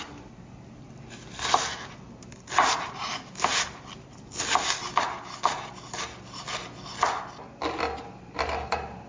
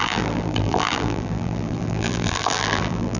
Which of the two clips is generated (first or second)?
second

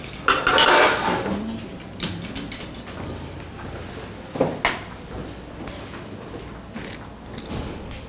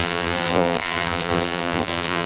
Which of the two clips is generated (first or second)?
second